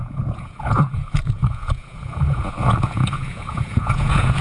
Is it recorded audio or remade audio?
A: remade